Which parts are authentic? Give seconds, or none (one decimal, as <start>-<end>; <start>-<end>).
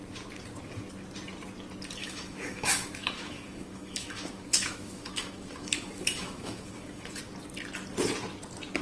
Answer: 0.0-2.0; 7.2-8.8